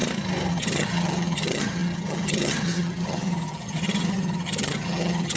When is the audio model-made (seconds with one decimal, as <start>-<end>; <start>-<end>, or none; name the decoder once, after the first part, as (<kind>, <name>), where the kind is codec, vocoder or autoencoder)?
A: 0.5-5.4 (vocoder, HiFi-GAN)